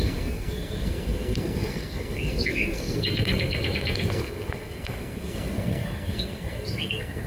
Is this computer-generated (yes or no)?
yes